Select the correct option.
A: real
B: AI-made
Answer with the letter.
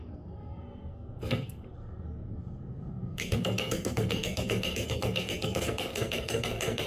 B